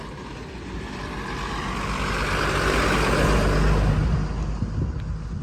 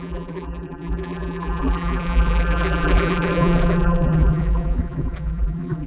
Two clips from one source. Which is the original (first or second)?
first